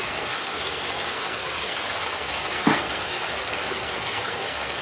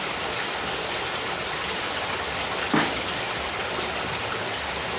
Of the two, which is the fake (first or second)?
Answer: first